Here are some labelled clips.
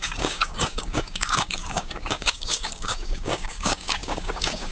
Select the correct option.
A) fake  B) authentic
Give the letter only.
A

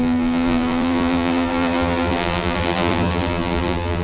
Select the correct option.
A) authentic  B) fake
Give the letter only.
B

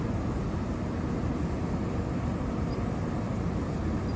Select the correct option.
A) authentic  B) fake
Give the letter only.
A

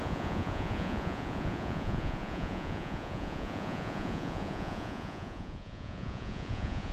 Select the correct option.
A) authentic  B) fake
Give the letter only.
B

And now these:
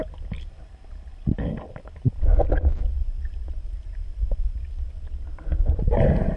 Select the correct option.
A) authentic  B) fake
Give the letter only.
A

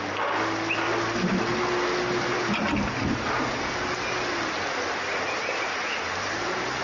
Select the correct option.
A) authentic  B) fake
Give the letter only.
A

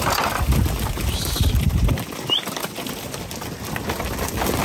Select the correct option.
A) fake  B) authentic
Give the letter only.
B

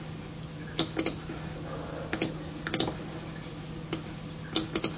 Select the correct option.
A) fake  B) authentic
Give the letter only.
B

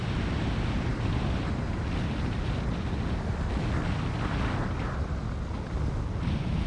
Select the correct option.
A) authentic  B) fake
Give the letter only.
A